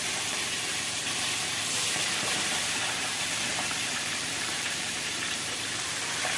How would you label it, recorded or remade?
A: remade